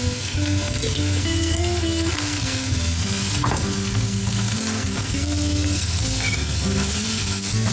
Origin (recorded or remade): remade